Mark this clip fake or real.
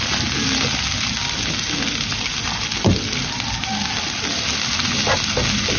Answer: real